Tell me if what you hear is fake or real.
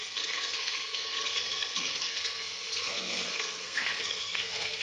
fake